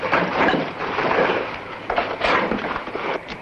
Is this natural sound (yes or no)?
no